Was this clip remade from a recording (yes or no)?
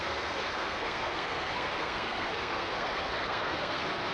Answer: yes